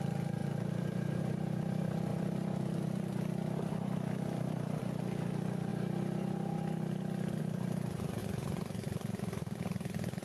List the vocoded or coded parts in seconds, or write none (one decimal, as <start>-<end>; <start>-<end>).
2.1-4.8; 8.2-9.6